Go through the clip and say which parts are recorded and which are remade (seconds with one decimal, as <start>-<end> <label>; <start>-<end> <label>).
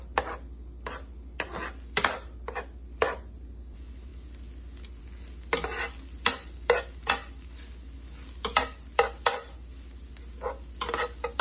0.0-11.4 recorded